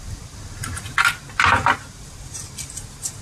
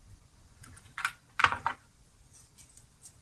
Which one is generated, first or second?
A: second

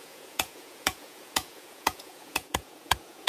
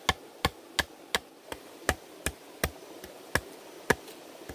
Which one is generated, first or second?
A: first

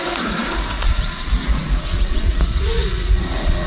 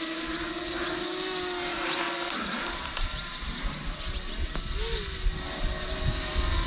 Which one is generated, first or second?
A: first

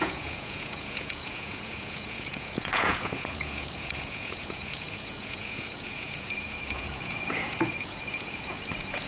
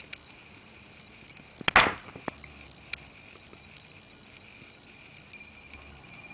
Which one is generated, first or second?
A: first